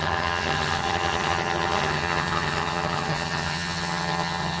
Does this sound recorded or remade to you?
remade